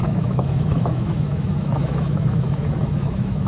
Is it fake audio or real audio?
fake